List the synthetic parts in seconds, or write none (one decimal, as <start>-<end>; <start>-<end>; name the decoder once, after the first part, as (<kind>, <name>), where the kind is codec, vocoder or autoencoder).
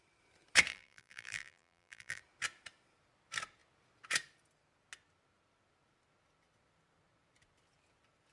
0.7-2.2 (vocoder, BigVGAN v2)